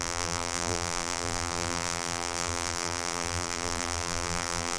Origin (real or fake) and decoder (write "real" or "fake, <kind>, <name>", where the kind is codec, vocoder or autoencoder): fake, vocoder, BigVGAN v2